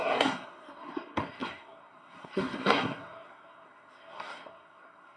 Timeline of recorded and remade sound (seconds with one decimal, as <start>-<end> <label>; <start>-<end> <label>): 0.0-5.2 remade